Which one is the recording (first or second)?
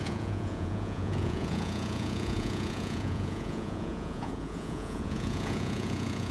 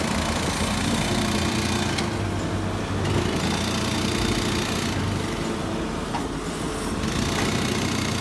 second